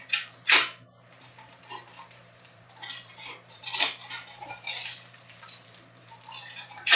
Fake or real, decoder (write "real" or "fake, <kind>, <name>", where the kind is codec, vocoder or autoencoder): fake, vocoder, BigVGAN v2